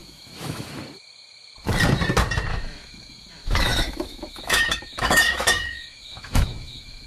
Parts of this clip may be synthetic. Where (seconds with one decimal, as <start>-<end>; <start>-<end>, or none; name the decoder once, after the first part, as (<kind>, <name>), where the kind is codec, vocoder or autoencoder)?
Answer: 0.0-0.7 (autoencoder, DAC-VAE); 2.5-7.1